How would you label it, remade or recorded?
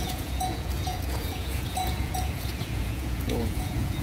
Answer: remade